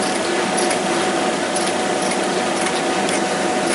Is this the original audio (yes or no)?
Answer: yes